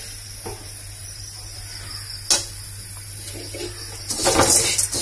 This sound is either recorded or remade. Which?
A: recorded